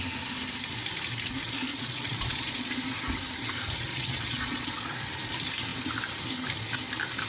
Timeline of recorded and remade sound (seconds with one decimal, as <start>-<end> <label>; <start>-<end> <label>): 0.0-1.7 recorded; 1.7-2.7 remade; 2.7-3.9 recorded; 3.9-5.1 remade; 5.1-7.3 recorded